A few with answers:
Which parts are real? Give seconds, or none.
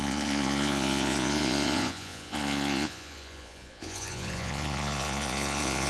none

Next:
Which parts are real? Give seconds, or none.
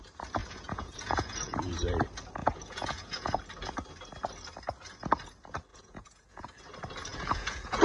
0.0-0.4; 1.7-2.4; 3.4-5.7; 6.6-7.1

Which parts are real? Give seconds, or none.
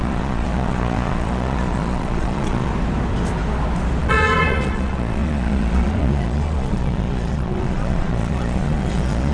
2.7-4.0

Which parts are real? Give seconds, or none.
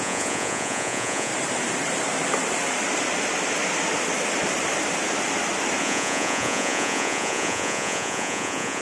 1.3-5.8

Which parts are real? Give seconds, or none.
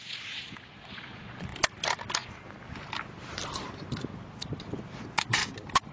1.5-5.0; 5.4-5.9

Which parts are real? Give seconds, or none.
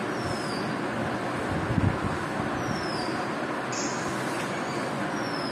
0.0-0.5; 1.0-4.3